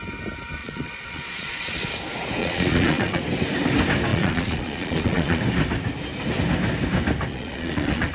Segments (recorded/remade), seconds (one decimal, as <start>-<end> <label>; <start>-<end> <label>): 0.0-0.6 recorded; 0.6-1.9 remade; 1.9-2.4 recorded; 2.4-3.2 remade; 3.2-4.1 recorded; 4.1-5.4 remade; 5.4-7.3 recorded; 7.3-8.1 remade